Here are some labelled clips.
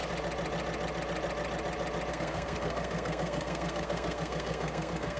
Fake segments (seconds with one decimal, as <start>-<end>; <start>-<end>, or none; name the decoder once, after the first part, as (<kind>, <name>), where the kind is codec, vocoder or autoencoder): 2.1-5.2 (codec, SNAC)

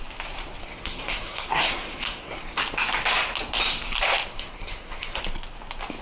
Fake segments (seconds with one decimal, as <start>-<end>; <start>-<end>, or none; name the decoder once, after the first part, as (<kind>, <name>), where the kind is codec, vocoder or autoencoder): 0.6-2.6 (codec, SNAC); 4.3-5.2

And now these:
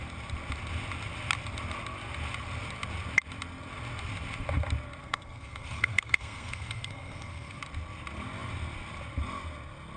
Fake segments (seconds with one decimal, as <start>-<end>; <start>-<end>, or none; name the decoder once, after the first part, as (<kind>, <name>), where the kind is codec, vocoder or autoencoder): 5.0-7.6 (codec, SNAC)